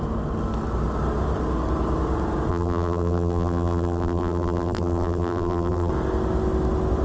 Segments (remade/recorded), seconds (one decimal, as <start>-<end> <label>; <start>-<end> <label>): 0.0-2.5 recorded; 2.5-5.9 remade; 5.9-7.0 recorded